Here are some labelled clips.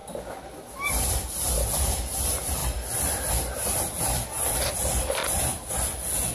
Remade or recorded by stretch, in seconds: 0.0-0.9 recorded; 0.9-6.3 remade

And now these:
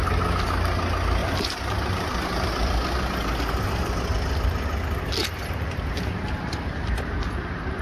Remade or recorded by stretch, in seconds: 0.0-1.2 recorded; 1.2-2.5 remade; 2.5-5.2 recorded; 5.2-7.8 remade

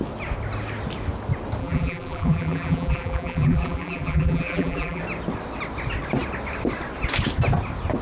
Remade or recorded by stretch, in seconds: 0.0-1.6 recorded; 1.6-5.0 remade; 5.0-8.0 recorded

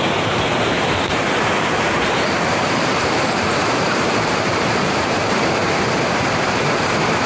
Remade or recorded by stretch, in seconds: 0.0-7.3 remade

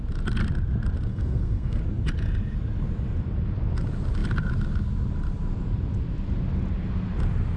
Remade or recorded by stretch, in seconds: 0.0-1.1 recorded; 1.1-1.8 remade; 1.8-7.6 recorded